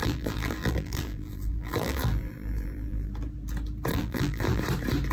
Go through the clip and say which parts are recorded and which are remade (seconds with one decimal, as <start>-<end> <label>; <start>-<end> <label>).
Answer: 0.0-3.1 remade; 3.1-3.9 recorded; 3.9-4.6 remade; 4.6-5.1 recorded